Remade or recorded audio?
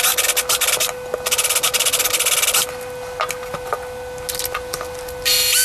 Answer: recorded